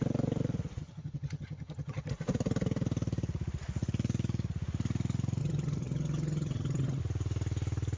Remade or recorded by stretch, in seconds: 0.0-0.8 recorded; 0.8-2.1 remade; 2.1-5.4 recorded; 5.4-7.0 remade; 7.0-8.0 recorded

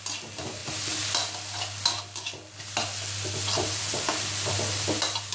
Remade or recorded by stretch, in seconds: 0.0-5.3 recorded

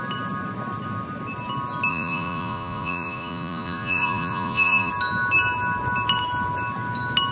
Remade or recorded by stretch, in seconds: 0.0-1.9 recorded; 1.9-4.9 remade; 4.9-7.3 recorded

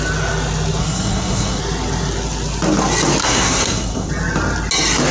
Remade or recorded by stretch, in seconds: 0.0-0.8 recorded; 0.8-1.6 remade; 1.6-3.2 recorded; 3.2-4.1 remade; 4.1-5.1 recorded

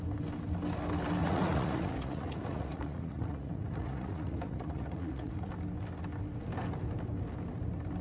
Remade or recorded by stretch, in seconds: 0.0-1.2 recorded; 1.2-5.5 remade; 5.5-8.0 recorded